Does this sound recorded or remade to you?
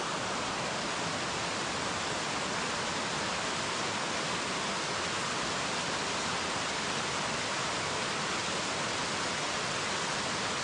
recorded